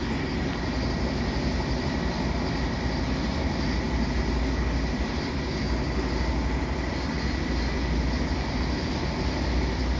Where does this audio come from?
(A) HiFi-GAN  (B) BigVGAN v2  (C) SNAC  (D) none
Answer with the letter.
D